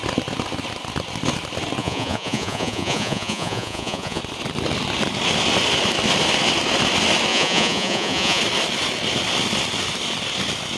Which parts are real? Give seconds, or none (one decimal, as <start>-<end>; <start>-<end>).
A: 0.0-1.8; 4.2-7.3; 8.4-10.8